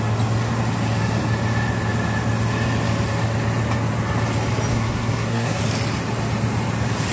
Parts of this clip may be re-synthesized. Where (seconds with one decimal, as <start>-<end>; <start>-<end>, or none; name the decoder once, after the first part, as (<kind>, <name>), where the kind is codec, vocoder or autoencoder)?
4.7-5.6 (codec, SNAC)